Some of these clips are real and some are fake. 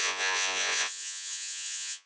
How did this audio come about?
fake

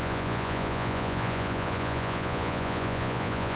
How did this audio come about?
fake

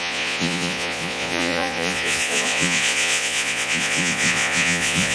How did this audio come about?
fake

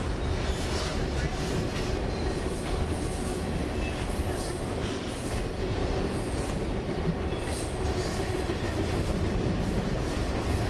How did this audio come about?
real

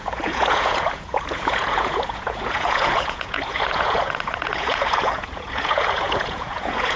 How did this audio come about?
fake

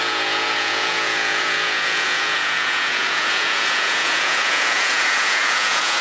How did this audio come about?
fake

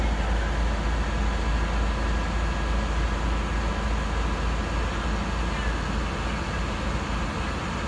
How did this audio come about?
real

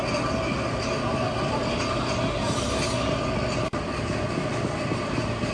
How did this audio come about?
real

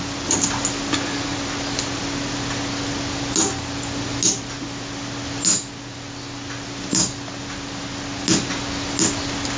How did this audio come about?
real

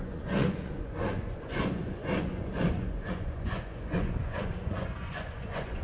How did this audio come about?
fake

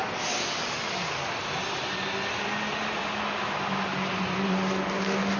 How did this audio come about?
real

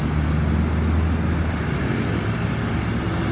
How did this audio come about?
real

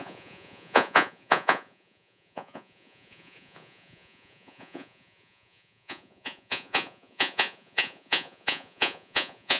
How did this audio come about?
fake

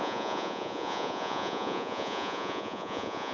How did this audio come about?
fake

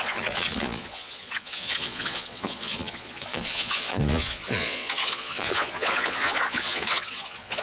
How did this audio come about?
fake